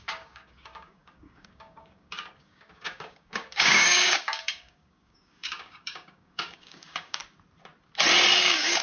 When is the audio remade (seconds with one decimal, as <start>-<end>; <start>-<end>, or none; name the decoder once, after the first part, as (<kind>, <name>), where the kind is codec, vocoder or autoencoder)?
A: 0.0-7.2 (codec, DAC); 8.4-8.8